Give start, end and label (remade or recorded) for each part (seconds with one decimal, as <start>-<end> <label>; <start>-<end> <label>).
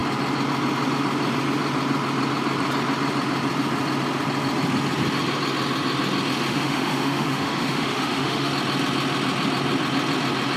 0.0-6.5 recorded; 6.5-8.5 remade; 8.5-10.6 recorded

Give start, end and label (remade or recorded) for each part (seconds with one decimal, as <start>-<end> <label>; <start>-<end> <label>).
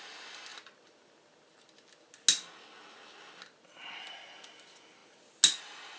0.0-6.0 recorded